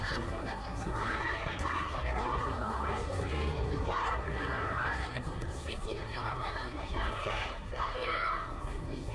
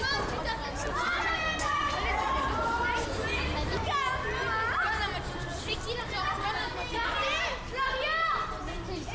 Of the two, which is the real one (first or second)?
second